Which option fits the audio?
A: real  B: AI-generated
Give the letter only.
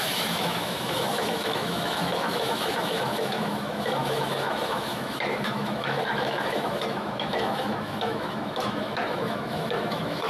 B